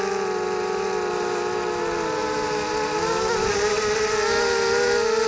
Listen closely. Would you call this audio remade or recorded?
recorded